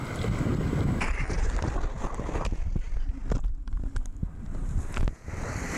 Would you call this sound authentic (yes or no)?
yes